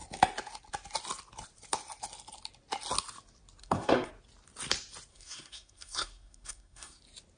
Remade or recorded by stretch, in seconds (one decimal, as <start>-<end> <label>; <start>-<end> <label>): 0.0-3.6 recorded; 3.6-4.1 remade; 4.1-5.1 recorded; 5.1-7.0 remade; 7.0-7.4 recorded